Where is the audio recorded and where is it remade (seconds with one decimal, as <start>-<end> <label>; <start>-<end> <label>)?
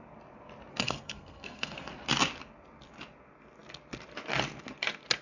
0.0-0.7 recorded; 0.7-1.9 remade; 1.9-5.2 recorded